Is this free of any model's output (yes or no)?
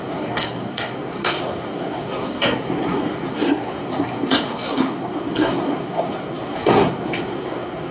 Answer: no